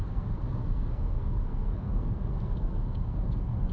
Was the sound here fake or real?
fake